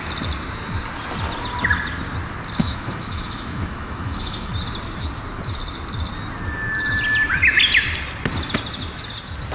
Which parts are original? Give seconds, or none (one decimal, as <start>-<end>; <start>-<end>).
0.0-2.6; 4.5-9.5